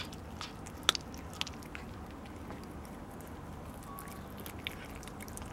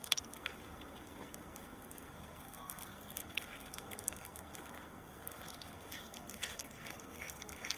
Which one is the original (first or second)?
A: first